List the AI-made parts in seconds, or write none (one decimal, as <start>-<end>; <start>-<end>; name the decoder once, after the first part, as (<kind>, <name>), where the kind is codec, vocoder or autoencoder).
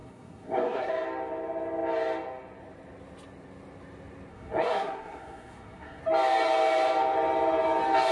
0.0-0.9 (codec, SNAC); 4.3-6.0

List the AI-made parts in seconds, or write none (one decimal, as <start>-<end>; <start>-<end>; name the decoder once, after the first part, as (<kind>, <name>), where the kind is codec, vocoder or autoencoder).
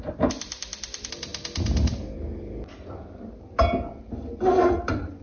0.0-1.3 (vocoder, BigVGAN v2); 4.4-5.2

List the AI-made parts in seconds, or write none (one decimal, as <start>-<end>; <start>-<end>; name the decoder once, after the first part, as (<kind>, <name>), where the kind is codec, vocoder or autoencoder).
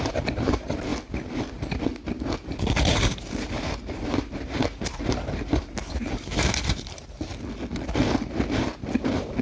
0.0-0.9 (vocoder, BigVGAN v2); 2.8-7.3; 9.0-9.4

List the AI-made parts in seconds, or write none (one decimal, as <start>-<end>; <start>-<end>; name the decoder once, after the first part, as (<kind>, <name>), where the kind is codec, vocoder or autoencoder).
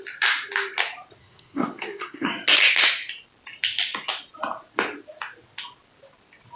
1.2-2.3 (codec, SNAC)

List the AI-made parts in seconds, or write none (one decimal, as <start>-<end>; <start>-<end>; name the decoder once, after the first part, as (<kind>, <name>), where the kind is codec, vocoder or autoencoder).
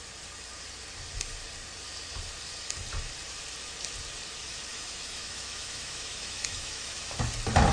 4.7-7.0 (autoencoder, DAC-VAE)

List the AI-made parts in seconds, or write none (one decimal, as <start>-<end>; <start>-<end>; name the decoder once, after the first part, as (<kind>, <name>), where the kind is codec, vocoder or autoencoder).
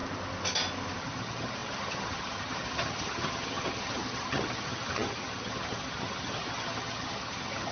1.0-7.7 (vocoder, HiFi-GAN)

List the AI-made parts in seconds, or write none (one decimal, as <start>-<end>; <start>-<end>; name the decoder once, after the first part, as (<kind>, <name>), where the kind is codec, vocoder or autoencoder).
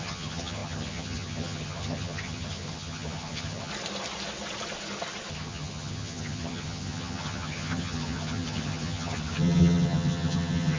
0.0-3.7 (vocoder, HiFi-GAN); 5.3-10.8